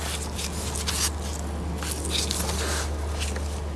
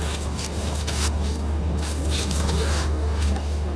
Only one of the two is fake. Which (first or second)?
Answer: second